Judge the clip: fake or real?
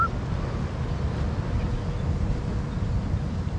real